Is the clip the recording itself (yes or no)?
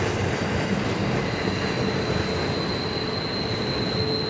yes